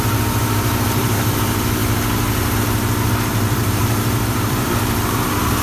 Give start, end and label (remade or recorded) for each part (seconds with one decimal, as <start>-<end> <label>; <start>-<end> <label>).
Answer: 0.0-1.8 remade; 1.8-3.1 recorded; 3.1-5.6 remade